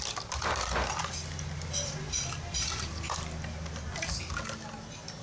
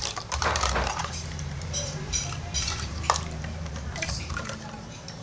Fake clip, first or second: second